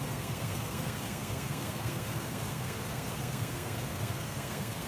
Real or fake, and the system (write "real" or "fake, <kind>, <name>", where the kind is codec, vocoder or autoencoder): fake, codec, SNAC